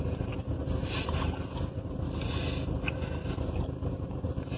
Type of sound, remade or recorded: recorded